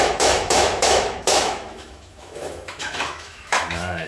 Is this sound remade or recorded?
remade